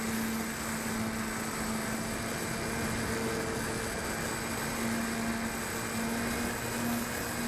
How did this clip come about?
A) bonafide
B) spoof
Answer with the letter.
A